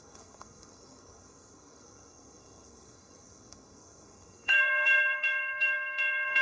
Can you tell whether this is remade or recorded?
remade